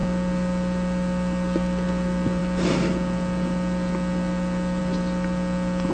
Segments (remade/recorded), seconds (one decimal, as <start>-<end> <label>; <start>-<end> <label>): 0.0-5.9 recorded